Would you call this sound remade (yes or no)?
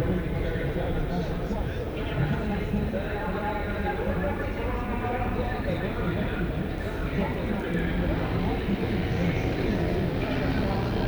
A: yes